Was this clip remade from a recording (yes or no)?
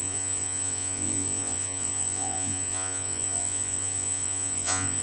yes